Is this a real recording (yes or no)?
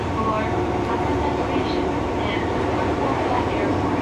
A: no